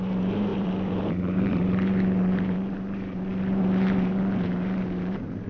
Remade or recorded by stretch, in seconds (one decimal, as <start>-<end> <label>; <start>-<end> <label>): 0.0-5.5 remade